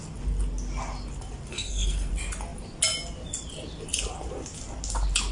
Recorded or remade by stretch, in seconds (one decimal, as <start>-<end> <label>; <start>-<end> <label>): 0.0-1.5 recorded; 1.5-2.1 remade; 2.1-5.3 recorded